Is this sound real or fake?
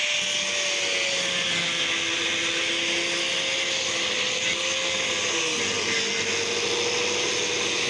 real